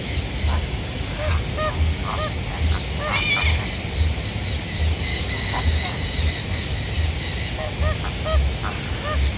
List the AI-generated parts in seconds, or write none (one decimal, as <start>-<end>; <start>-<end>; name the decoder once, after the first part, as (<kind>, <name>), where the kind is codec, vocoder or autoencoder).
0.5-1.3 (codec, DAC); 5.1-6.2